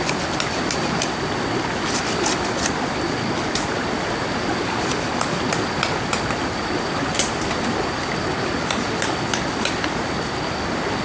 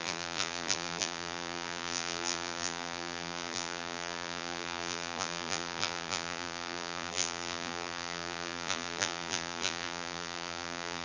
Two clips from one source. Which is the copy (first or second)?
second